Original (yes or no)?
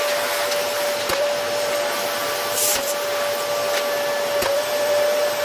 yes